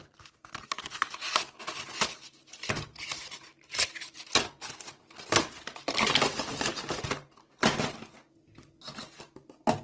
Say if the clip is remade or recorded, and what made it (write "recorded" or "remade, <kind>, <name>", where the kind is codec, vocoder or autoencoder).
recorded